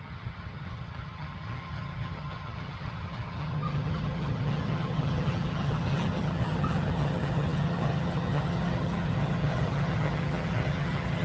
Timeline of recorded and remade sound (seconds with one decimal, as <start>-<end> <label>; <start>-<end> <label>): 0.0-11.2 remade